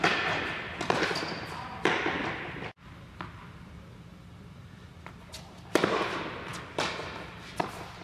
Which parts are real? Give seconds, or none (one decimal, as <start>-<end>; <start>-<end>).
0.0-8.0